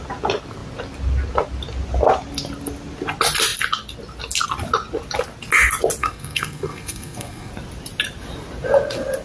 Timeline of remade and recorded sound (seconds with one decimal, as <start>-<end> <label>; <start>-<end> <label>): 0.0-6.0 recorded; 6.0-7.5 remade; 7.5-9.2 recorded